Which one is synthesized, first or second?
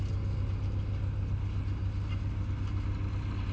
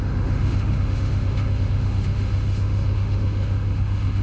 second